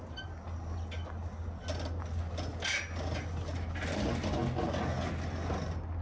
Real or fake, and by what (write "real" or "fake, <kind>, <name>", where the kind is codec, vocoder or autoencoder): real